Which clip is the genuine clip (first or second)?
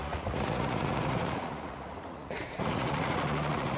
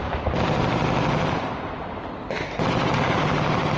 second